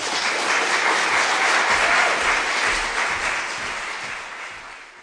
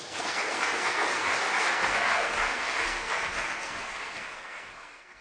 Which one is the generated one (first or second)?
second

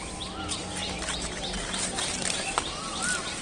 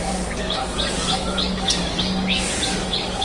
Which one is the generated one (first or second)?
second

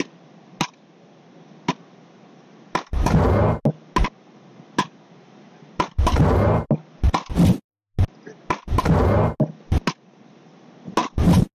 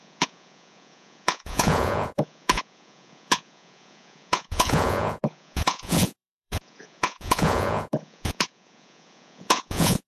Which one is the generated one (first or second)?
second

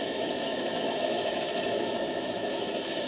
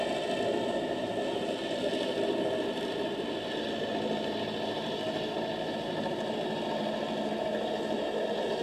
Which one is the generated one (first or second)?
first